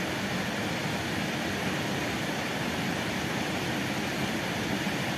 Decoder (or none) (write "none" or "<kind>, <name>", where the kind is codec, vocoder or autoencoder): none